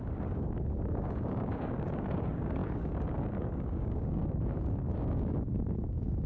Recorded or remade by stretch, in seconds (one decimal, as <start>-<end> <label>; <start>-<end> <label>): 0.0-6.3 remade